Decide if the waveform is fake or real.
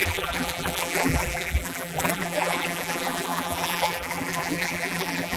fake